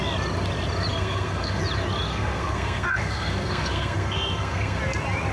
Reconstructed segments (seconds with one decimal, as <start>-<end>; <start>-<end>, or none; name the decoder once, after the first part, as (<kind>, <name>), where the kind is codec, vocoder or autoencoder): 0.9-1.6 (codec, SNAC); 2.1-4.8